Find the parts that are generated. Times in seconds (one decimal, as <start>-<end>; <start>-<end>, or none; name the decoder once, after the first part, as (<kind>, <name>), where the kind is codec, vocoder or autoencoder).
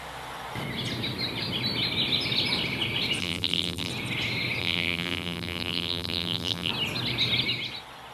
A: 3.2-3.9 (vocoder, BigVGAN v2); 4.6-6.7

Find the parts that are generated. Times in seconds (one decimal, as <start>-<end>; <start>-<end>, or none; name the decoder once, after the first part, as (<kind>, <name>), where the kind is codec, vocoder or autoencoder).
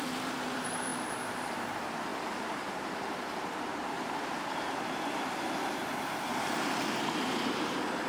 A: 0.0-8.1 (vocoder, BigVGAN v2)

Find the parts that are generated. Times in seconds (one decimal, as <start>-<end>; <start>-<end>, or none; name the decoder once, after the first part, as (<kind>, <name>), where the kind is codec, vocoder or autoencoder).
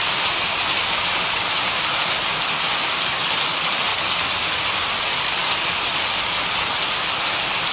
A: 3.9-4.6 (vocoder, BigVGAN v2)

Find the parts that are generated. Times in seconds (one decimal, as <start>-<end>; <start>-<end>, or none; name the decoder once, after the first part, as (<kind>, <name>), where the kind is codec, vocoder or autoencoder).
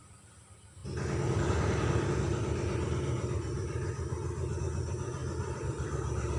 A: 5.2-6.4 (vocoder, BigVGAN v2)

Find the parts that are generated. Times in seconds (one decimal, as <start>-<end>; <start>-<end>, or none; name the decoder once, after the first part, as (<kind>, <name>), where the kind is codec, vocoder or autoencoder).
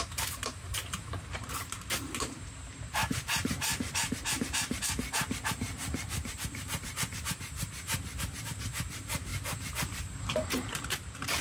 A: 0.0-9.3 (vocoder, BigVGAN v2); 10.0-11.4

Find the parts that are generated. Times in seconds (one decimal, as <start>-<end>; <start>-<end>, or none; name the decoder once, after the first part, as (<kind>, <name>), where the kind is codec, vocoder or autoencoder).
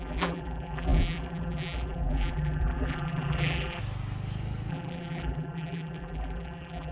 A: 0.0-3.8 (vocoder, BigVGAN v2); 4.7-6.9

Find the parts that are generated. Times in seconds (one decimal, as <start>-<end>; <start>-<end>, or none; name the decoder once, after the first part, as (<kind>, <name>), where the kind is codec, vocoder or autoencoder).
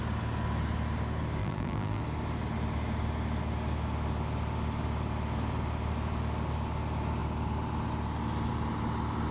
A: 1.4-2.0 (vocoder, BigVGAN v2)